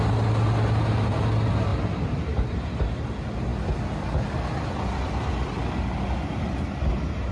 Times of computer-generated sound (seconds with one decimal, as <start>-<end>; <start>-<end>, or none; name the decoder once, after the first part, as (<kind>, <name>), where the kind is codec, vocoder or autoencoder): 1.7-2.6 (vocoder, BigVGAN v2)